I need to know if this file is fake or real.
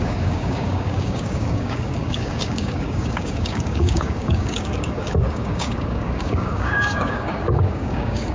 fake